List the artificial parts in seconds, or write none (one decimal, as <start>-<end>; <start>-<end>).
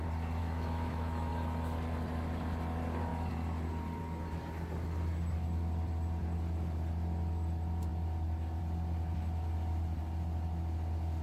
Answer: 0.4-1.3